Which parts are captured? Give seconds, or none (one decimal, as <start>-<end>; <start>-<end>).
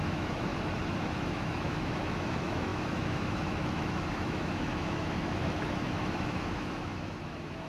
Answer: 0.5-1.0